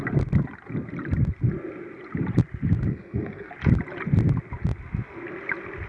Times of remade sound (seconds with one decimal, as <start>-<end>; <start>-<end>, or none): 2.9-3.5